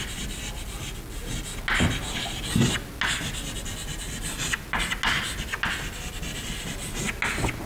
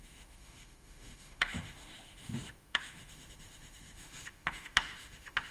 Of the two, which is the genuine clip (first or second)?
first